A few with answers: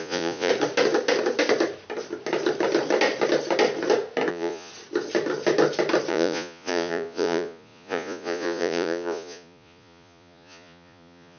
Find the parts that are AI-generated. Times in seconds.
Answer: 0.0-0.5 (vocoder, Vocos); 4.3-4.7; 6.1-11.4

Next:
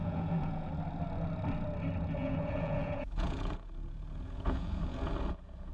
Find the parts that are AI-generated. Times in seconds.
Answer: 0.0-0.7 (vocoder, Vocos); 2.2-5.7

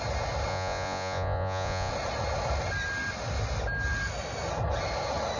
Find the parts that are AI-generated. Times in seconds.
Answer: 0.5-1.9 (vocoder, Vocos)

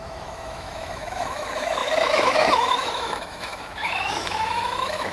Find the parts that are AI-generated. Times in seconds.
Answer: 0.0-5.1 (autoencoder, DAC-VAE)

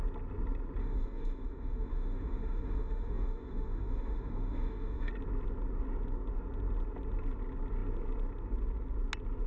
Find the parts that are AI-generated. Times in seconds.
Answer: 0.8-5.1 (autoencoder, DAC-VAE)